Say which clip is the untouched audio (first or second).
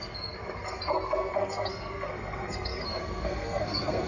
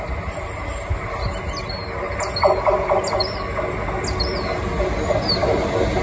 second